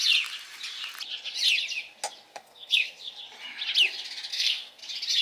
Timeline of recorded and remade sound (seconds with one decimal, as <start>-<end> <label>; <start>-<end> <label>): 0.0-2.3 recorded; 2.3-3.2 remade; 3.2-4.3 recorded; 4.3-4.8 remade; 4.8-5.2 recorded